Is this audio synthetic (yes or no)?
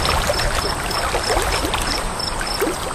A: no